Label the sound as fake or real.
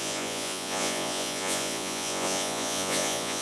fake